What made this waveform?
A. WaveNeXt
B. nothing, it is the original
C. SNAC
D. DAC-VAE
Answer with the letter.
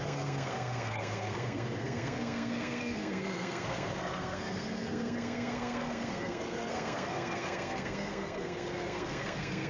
C